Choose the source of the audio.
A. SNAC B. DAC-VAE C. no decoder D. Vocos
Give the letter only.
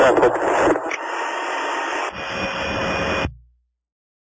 C